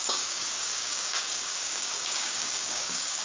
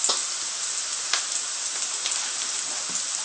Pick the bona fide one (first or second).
second